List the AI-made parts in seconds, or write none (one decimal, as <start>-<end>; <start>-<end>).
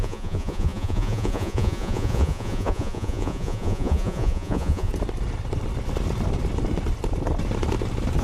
0.0-4.9